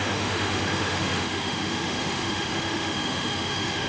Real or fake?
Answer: fake